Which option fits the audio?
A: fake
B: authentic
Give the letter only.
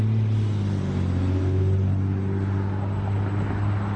B